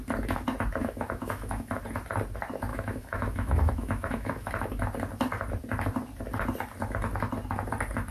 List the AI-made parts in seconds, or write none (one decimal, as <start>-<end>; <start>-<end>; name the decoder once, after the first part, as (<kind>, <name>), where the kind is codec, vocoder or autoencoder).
0.8-1.8 (autoencoder, DAC-VAE); 2.7-4.5